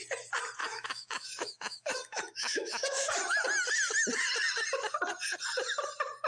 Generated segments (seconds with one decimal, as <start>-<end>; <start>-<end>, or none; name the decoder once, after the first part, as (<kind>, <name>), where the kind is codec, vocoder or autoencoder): 0.6-3.1 (autoencoder, DAC-VAE)